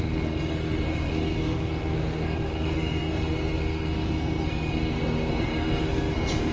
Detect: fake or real fake